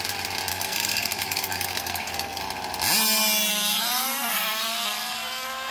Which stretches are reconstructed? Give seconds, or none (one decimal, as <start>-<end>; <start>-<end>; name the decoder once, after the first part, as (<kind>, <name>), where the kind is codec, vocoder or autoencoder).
0.5-2.4 (codec, SNAC); 3.5-5.7